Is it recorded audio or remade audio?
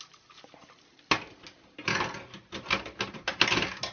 recorded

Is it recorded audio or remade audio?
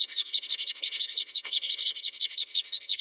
remade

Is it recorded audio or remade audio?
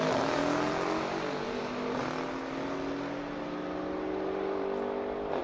recorded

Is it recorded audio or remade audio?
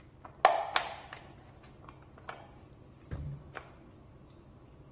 recorded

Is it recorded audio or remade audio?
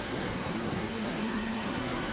remade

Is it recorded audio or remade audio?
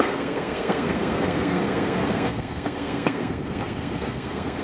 remade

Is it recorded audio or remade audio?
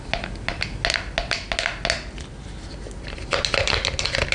recorded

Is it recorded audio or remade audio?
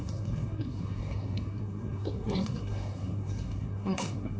remade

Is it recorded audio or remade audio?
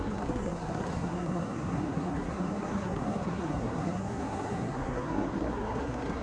remade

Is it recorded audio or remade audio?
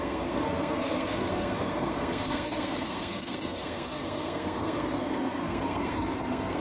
remade